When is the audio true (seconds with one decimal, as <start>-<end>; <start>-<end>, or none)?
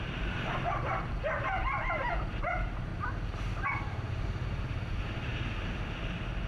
2.9-4.1; 5.3-6.5